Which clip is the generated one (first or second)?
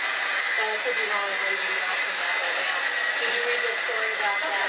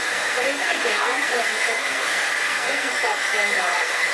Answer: second